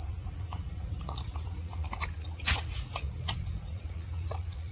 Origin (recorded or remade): remade